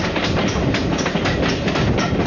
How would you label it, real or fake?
real